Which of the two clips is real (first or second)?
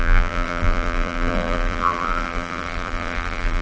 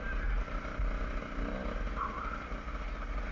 second